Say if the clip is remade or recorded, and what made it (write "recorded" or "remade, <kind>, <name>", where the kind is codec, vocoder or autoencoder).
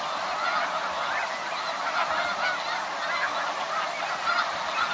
recorded